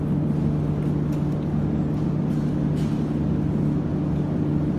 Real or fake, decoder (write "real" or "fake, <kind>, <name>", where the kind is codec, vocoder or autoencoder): real